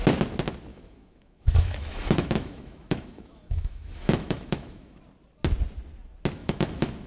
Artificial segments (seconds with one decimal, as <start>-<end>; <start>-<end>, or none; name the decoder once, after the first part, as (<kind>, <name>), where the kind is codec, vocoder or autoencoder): 0.7-5.0 (autoencoder, DAC-VAE); 6.4-7.1